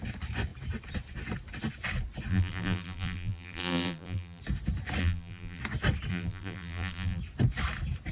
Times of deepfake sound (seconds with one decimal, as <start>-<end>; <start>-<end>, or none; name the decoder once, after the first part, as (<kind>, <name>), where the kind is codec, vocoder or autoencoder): 2.3-4.4 (vocoder, BigVGAN v2); 5.0-5.6; 6.1-7.2